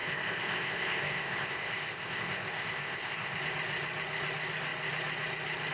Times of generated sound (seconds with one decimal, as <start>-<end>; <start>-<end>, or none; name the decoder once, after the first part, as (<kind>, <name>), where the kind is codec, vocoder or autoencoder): 0.0-3.4 (codec, ZipCodec)